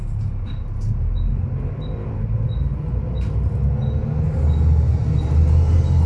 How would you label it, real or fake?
real